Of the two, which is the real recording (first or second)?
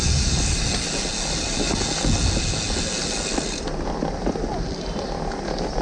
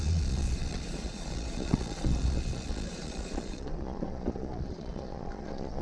first